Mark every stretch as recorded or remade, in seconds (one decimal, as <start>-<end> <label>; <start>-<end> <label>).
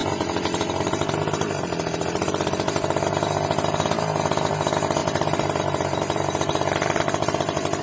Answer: 0.0-5.0 recorded; 5.0-7.8 remade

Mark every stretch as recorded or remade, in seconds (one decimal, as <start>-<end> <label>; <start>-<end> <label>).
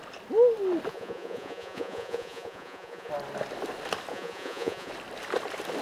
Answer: 0.0-0.9 recorded; 0.9-3.1 remade; 3.1-4.1 recorded; 4.1-4.9 remade; 4.9-5.8 recorded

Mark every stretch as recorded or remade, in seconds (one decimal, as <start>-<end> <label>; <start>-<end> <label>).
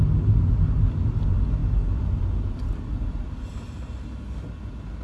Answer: 0.0-5.0 recorded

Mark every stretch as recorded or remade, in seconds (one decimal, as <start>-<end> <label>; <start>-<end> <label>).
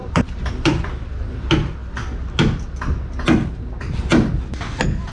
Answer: 0.0-1.8 remade; 1.8-5.1 recorded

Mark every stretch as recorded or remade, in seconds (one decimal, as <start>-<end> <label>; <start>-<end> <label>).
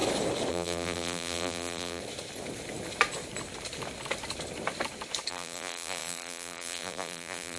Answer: 0.0-0.5 recorded; 0.5-2.0 remade; 2.0-5.3 recorded; 5.3-7.6 remade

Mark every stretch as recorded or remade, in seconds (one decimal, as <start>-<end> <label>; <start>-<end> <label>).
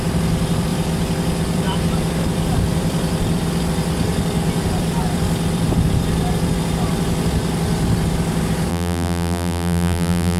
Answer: 0.0-8.7 recorded; 8.7-10.4 remade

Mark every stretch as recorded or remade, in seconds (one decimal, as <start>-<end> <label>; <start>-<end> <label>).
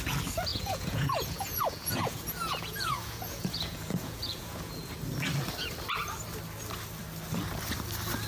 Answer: 0.0-0.5 recorded; 0.5-4.9 remade; 4.9-8.3 recorded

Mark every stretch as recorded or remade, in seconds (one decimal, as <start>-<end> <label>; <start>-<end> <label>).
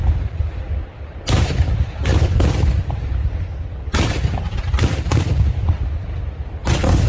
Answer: 0.0-7.1 remade